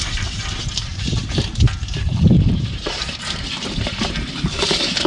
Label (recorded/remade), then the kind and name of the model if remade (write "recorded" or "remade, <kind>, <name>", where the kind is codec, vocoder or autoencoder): remade, vocoder, BigVGAN v2